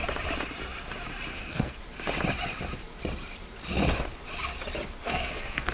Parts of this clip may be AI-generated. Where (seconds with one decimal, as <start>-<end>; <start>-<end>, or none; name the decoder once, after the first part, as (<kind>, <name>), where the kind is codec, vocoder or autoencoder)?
1.3-1.8 (codec, SNAC); 5.0-5.7